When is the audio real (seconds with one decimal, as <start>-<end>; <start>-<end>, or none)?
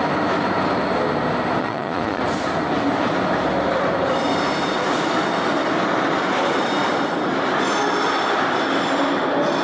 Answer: 0.0-1.6; 2.2-9.6